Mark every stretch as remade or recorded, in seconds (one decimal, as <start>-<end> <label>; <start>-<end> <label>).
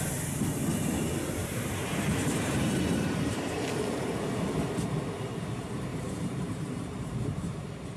0.0-1.4 recorded; 1.4-3.4 remade; 3.4-5.9 recorded; 5.9-7.6 remade; 7.6-8.0 recorded